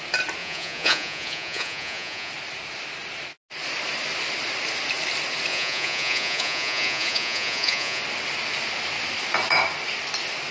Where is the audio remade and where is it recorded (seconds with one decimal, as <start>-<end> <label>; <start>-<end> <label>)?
0.0-0.4 recorded; 0.4-2.3 remade; 2.3-5.5 recorded; 5.5-8.0 remade; 8.0-10.5 recorded